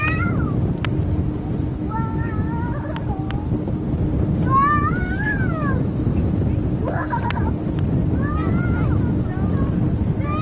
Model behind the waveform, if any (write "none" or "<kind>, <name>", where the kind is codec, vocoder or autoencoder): none